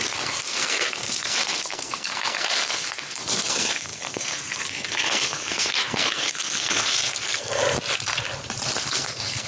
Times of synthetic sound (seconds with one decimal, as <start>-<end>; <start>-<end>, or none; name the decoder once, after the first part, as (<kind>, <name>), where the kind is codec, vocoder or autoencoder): 0.0-7.6 (codec, SNAC); 8.8-9.5